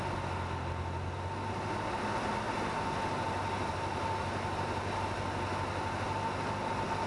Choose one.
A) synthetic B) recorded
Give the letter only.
B